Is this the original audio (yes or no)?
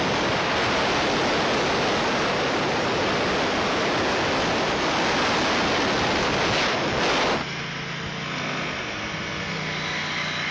yes